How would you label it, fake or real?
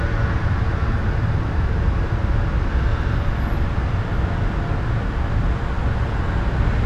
real